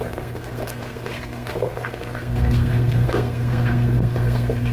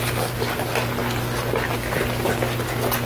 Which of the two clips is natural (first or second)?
second